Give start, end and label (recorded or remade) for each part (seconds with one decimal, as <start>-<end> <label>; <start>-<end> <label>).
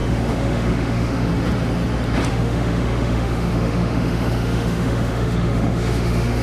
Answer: 0.0-1.3 remade; 1.3-2.3 recorded; 2.3-6.4 remade